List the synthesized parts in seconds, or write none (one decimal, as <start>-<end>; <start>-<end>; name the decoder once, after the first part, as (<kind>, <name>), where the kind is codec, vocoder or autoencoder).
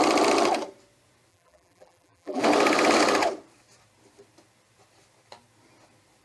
1.3-2.4 (vocoder, BigVGAN v2)